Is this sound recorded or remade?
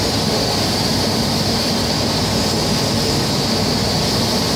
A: recorded